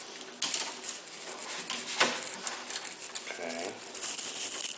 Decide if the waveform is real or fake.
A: real